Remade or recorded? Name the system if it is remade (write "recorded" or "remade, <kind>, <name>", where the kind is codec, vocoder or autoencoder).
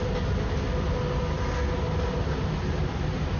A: recorded